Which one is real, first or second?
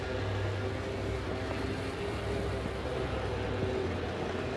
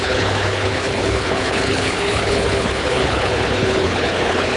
first